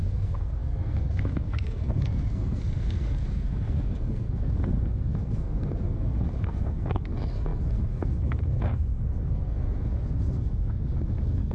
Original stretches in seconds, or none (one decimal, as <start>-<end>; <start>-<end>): none